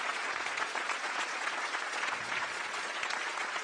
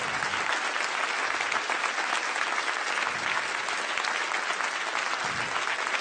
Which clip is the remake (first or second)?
first